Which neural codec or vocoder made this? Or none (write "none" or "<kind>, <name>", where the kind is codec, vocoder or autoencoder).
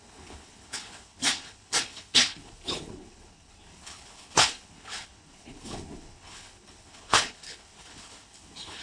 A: codec, HILCodec